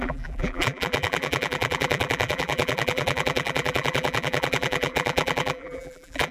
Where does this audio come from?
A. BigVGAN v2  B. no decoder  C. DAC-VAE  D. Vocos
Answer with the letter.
A